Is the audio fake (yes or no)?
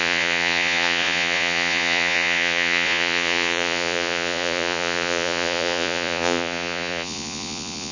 yes